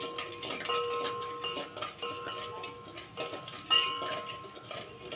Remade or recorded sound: recorded